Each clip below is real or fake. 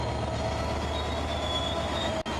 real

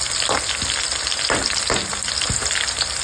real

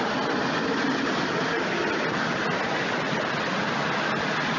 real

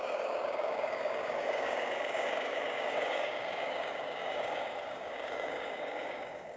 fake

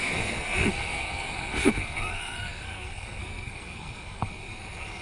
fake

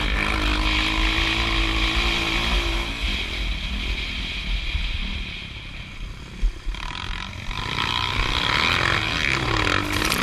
real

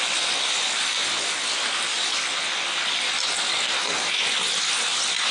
real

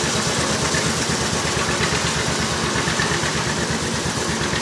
real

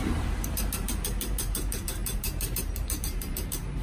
fake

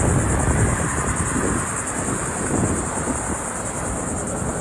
real